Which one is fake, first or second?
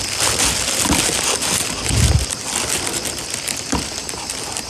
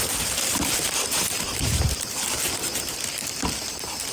second